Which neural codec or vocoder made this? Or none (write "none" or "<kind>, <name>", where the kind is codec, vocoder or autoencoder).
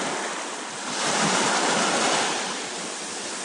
none